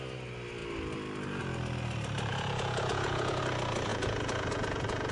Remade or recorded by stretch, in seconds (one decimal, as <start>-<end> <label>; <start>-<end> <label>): 0.0-2.3 recorded; 2.3-3.4 remade; 3.4-3.9 recorded; 3.9-5.1 remade